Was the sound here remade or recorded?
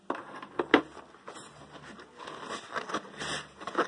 recorded